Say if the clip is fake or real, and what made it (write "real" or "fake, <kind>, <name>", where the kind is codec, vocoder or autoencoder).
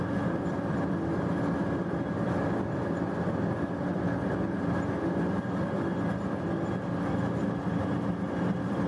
real